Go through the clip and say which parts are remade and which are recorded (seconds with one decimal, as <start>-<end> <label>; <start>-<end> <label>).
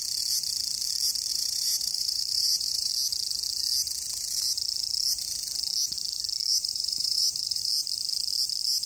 0.0-1.3 recorded; 1.3-2.9 remade; 2.9-6.5 recorded; 6.5-7.7 remade; 7.7-8.9 recorded